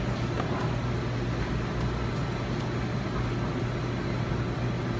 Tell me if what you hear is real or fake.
real